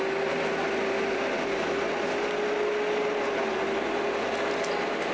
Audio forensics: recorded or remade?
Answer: recorded